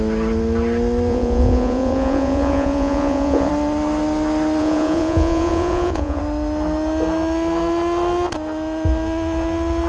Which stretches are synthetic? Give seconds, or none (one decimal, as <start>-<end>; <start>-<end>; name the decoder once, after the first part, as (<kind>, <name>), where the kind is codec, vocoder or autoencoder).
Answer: 1.1-3.5 (vocoder, Vocos); 4.6-6.2